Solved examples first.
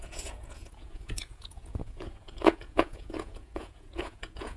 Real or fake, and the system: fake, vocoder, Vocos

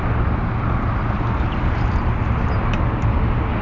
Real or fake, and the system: real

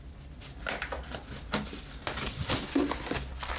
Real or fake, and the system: real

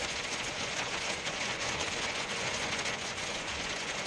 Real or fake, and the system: fake, vocoder, Vocos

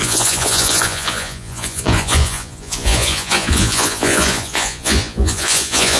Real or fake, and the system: fake, vocoder, Vocos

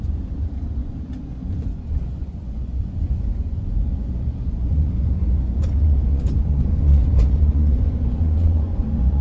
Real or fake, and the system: fake, vocoder, Vocos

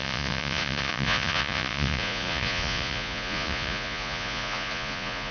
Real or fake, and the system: fake, vocoder, Vocos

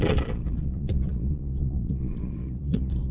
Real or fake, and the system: fake, vocoder, Vocos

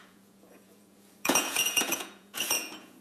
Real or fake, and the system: fake, vocoder, Vocos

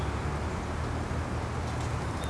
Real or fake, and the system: real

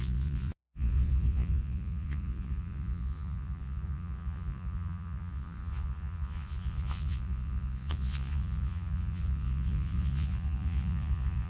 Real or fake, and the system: fake, vocoder, Vocos